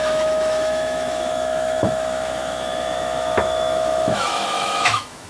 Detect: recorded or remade remade